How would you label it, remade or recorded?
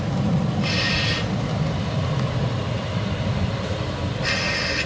recorded